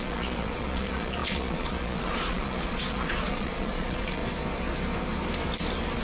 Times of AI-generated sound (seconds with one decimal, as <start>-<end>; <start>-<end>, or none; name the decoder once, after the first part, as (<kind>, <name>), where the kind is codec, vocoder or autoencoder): 0.0-4.2 (vocoder, Vocos)